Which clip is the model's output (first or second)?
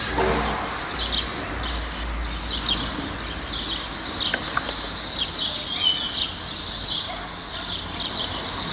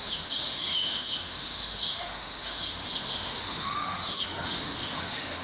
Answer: second